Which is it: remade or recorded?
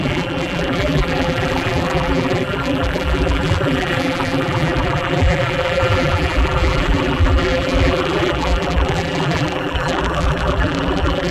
remade